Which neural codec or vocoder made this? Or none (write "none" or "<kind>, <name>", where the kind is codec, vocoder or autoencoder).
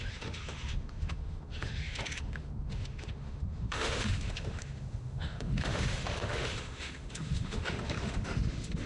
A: autoencoder, DAC-VAE